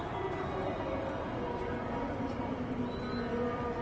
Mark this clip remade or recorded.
recorded